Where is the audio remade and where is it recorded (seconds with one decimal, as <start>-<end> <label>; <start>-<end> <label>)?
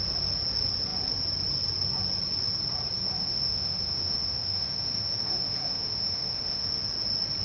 0.0-3.2 recorded; 3.2-6.8 remade; 6.8-7.4 recorded